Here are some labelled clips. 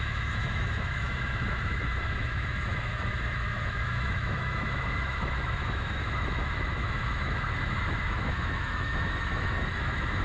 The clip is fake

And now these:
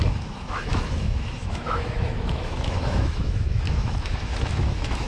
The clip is fake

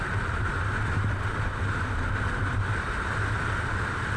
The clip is real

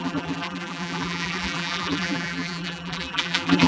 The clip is fake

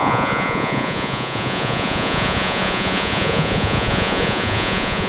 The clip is fake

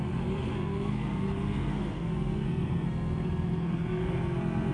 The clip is fake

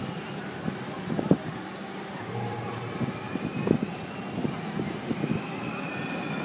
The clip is real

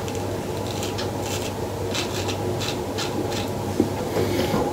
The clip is real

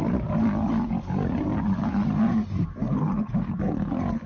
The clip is real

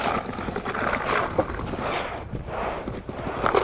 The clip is real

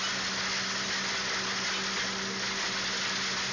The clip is real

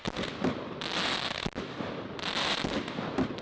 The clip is real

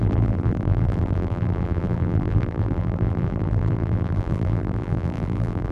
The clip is fake